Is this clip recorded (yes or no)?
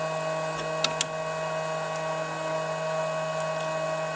yes